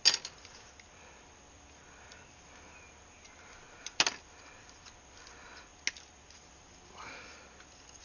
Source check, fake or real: real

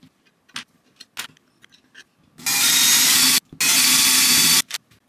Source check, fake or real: real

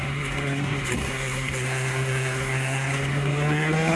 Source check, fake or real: fake